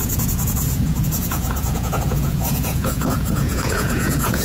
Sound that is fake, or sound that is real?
fake